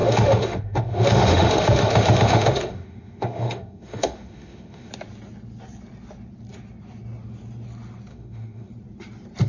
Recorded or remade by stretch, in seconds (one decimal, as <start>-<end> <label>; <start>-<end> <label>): 0.0-4.9 remade; 4.9-8.1 recorded; 8.1-8.7 remade; 8.7-9.5 recorded